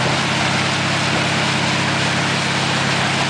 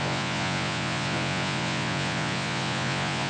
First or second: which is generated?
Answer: second